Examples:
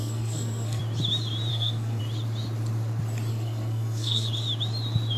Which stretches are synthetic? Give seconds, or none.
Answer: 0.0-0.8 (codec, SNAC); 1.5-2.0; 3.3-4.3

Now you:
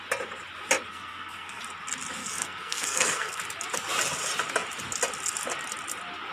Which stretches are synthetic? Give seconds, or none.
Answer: 0.9-1.6 (codec, SNAC); 2.2-3.4

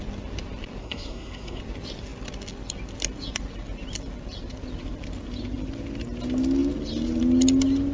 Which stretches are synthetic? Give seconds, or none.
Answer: 0.8-1.6 (codec, SNAC)

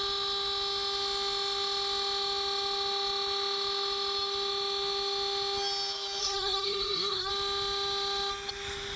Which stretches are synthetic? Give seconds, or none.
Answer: 6.2-7.3 (codec, SNAC)

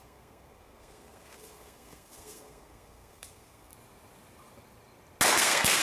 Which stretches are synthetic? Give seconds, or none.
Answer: 0.0-3.7 (codec, SNAC); 5.3-5.8

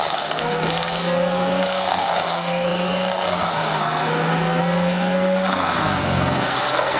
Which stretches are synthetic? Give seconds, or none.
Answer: 0.0-7.0 (codec, SNAC)

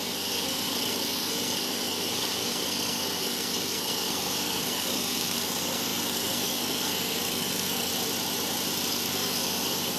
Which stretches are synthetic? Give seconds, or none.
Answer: 0.0-7.9 (codec, SNAC); 8.9-10.0